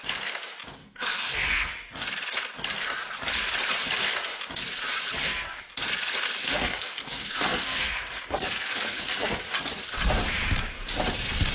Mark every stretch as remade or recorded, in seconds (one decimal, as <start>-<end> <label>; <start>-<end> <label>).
0.0-0.8 recorded; 0.8-1.7 remade; 1.7-6.4 recorded; 6.4-9.4 remade; 9.4-11.5 recorded